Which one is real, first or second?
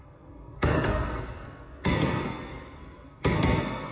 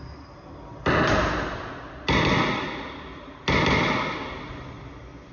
second